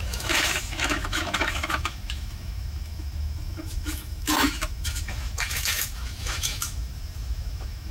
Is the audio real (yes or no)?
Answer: no